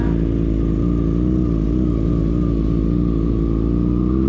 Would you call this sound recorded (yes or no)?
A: yes